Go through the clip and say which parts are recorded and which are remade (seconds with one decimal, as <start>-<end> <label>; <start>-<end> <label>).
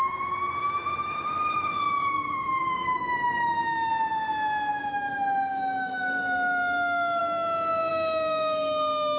0.0-3.9 remade; 3.9-4.9 recorded; 4.9-7.2 remade; 7.2-7.9 recorded; 7.9-9.2 remade